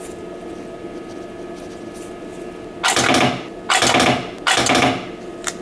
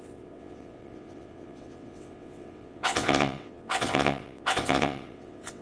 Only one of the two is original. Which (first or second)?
first